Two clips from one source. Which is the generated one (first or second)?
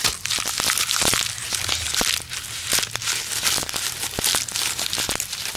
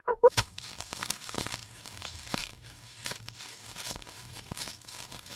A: second